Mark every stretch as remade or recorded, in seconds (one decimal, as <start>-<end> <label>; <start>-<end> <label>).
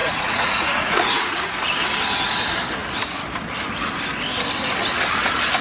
0.0-1.5 remade; 1.5-5.6 recorded